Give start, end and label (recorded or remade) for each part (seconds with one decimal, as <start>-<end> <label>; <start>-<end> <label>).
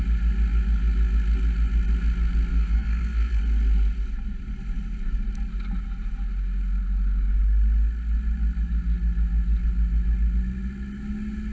0.0-2.5 recorded; 2.5-3.4 remade; 3.4-11.5 recorded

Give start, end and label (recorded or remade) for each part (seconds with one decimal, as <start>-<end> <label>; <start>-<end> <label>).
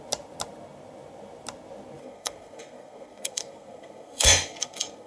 0.0-2.0 recorded; 2.0-5.1 remade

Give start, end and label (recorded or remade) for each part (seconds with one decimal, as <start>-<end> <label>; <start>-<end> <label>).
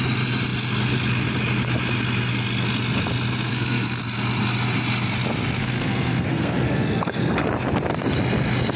0.0-3.5 recorded; 3.5-4.0 remade; 4.0-5.6 recorded; 5.6-7.5 remade; 7.5-8.8 recorded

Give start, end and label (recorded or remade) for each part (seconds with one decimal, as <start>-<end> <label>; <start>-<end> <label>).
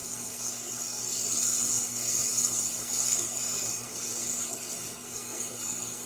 0.0-6.1 remade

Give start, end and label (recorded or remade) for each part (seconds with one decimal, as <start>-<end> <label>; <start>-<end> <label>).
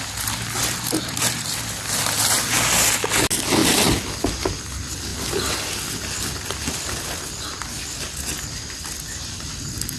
0.0-10.0 recorded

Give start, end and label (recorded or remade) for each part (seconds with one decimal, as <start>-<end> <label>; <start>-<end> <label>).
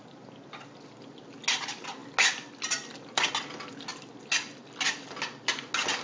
0.0-6.0 recorded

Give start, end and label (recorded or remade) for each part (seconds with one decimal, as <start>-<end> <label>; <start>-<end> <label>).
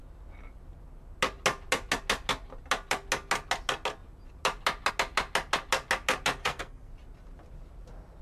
0.0-6.4 recorded; 6.4-6.9 remade; 6.9-8.2 recorded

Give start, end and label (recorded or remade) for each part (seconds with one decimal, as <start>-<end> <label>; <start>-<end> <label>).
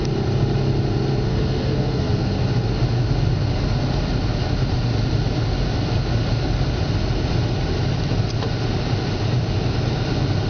0.0-1.3 recorded; 1.3-2.3 remade; 2.3-10.5 recorded